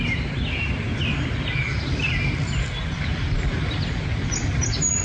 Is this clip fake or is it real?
real